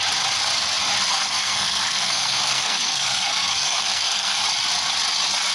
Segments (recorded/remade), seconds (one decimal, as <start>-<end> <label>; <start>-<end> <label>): 0.0-1.1 recorded; 1.1-4.4 remade; 4.4-5.5 recorded